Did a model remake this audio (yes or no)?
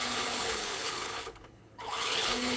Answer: yes